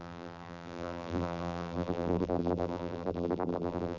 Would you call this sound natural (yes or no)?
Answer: no